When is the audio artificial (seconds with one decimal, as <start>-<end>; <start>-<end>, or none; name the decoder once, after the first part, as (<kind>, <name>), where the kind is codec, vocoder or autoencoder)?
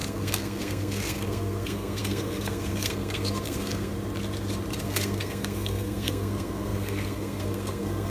0.0-3.9 (codec, SNAC); 4.8-8.1